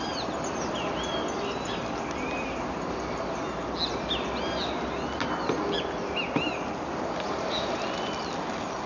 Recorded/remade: recorded